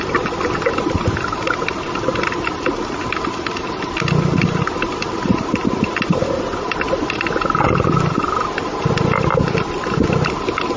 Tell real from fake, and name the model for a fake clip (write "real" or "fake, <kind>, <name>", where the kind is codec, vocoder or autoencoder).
real